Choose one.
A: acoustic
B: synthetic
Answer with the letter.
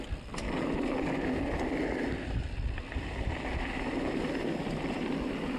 A